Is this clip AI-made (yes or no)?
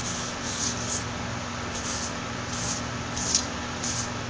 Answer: no